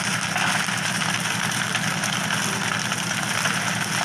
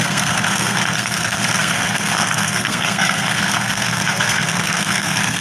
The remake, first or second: second